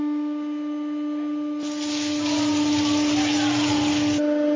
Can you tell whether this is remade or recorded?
recorded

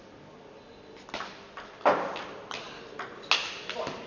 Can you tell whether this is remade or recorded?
recorded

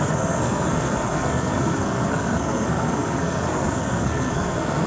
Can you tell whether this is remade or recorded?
remade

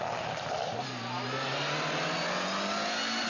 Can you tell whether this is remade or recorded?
recorded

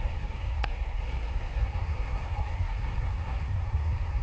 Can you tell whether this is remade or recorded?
remade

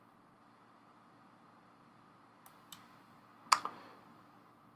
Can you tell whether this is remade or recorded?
recorded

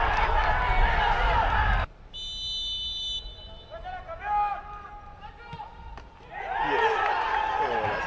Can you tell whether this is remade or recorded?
recorded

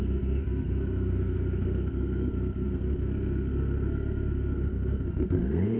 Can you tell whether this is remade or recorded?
remade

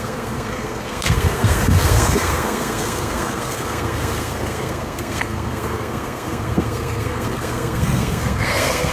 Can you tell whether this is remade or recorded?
remade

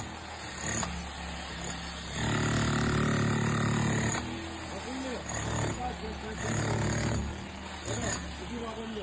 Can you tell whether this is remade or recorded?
recorded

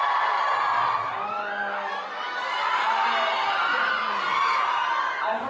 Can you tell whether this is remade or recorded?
recorded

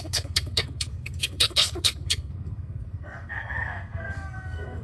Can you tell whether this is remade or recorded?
remade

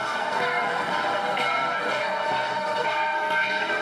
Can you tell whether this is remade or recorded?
remade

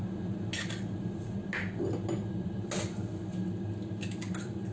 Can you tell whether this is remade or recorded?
recorded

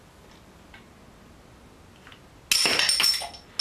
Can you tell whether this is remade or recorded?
recorded